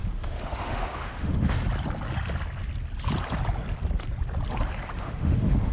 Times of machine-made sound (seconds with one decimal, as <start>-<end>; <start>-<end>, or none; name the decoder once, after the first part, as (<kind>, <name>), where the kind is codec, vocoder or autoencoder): 0.0-1.6 (autoencoder, DAC-VAE); 5.0-5.7